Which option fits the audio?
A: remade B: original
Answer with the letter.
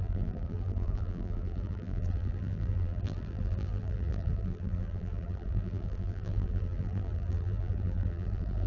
A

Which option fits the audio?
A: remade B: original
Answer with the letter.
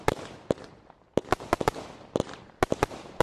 B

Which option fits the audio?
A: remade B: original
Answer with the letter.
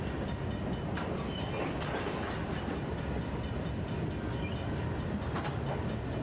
B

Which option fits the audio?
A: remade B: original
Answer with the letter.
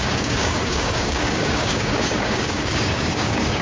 A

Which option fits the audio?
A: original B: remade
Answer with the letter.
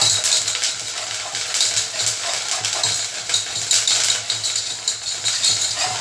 A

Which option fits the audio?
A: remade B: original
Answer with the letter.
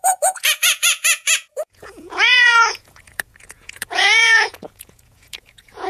A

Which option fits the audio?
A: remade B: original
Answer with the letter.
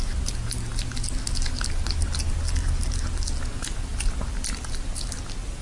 B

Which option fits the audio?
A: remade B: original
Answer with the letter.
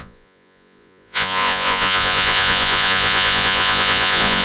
A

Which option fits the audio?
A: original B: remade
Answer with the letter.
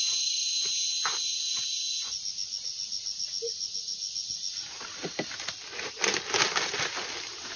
A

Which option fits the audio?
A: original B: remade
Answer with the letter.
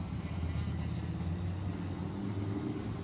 A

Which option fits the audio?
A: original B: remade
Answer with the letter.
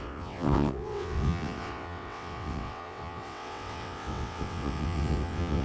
B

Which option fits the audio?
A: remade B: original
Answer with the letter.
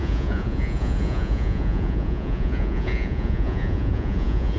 A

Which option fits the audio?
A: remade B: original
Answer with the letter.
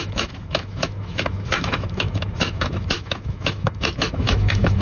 A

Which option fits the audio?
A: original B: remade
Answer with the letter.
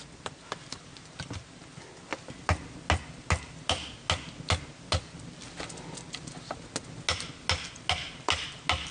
A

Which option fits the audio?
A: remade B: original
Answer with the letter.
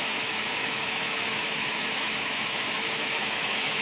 A